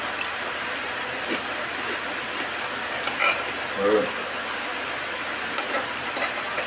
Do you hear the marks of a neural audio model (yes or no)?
no